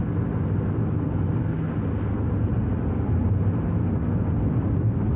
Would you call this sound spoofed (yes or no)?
no